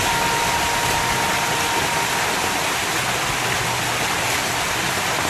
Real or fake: real